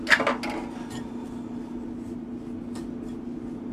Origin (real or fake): real